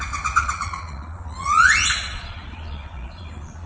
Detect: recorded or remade remade